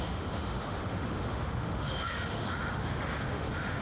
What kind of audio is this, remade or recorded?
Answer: remade